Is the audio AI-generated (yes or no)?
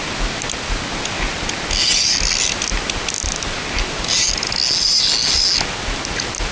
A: no